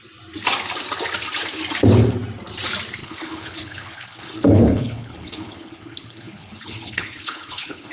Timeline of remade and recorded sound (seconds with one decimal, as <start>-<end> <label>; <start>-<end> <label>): 0.0-3.0 recorded; 3.0-7.9 remade

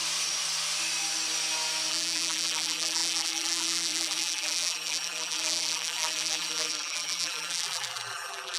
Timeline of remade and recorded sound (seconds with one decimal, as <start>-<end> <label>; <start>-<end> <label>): 0.0-1.9 recorded; 1.9-8.6 remade

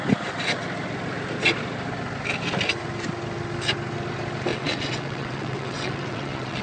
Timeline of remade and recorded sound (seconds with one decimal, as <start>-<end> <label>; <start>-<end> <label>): 0.0-4.5 recorded; 4.5-6.6 remade

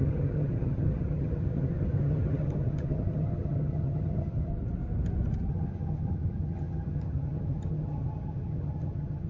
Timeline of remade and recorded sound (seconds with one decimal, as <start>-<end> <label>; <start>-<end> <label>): 0.0-4.5 remade; 4.5-5.5 recorded; 5.5-9.3 remade

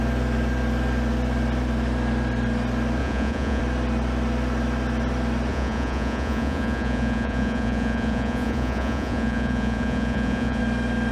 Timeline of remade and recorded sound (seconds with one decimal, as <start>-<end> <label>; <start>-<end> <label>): 0.0-3.0 recorded; 3.0-3.6 remade; 3.6-5.5 recorded; 5.5-10.6 remade; 10.6-11.1 recorded

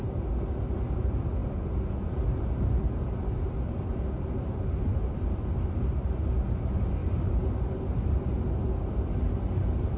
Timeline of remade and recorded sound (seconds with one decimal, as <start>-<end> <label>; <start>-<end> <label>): 0.0-10.0 recorded

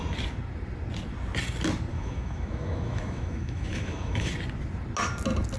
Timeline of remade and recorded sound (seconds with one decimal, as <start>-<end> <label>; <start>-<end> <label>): 0.0-1.9 recorded; 1.9-4.3 remade; 4.3-5.6 recorded

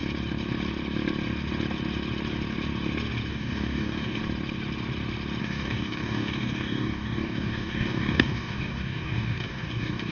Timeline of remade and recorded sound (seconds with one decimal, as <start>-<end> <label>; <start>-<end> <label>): 0.0-3.3 recorded; 3.3-4.2 remade; 4.2-5.4 recorded; 5.4-10.1 remade